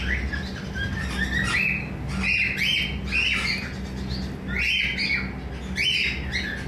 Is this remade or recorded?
recorded